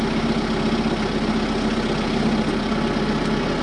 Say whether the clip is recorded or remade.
recorded